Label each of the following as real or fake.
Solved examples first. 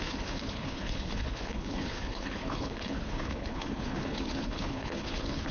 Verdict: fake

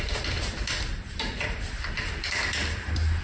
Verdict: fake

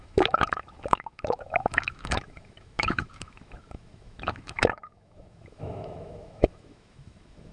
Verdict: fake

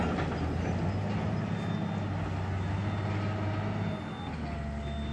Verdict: real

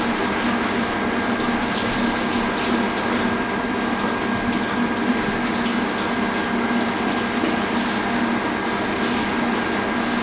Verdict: real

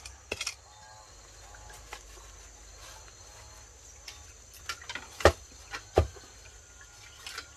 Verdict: real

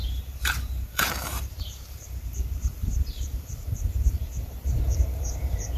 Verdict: fake